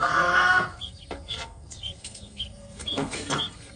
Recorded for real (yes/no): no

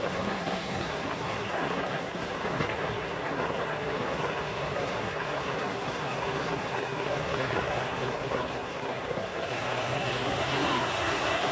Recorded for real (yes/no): no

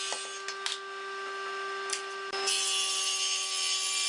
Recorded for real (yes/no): yes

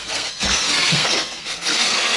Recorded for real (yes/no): no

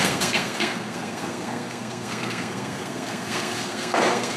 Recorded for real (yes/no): no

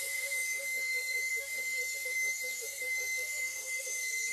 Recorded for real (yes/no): no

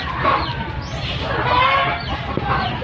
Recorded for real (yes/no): yes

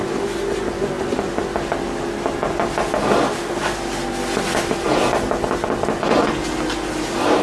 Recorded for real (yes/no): yes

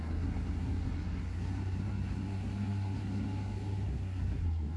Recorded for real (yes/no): no